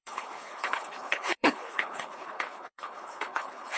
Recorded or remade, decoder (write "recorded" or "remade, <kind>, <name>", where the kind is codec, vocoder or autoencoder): remade, codec, HILCodec